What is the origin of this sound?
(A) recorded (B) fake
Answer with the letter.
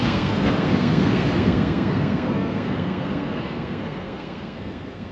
B